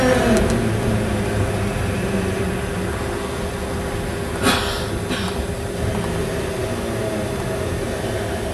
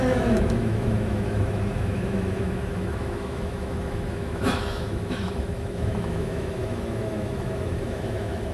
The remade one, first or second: second